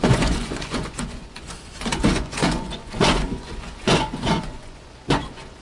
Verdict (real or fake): fake